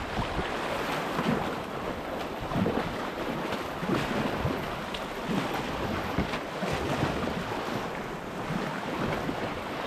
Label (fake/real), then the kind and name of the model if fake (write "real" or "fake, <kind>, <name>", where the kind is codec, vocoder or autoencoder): real